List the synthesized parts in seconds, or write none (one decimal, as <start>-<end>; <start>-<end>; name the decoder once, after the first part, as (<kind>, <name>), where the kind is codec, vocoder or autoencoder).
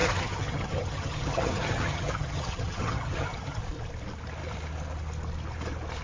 0.0-3.6 (vocoder, HiFi-GAN)